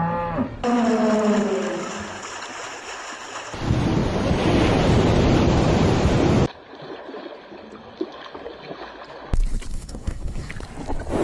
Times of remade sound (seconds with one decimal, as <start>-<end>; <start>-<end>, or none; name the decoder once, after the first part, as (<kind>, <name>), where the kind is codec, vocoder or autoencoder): 9.7-10.5 (codec, SNAC)